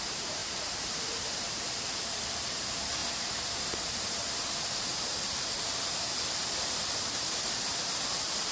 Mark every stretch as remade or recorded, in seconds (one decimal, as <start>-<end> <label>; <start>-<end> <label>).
0.0-3.0 remade; 3.0-3.6 recorded; 3.6-8.5 remade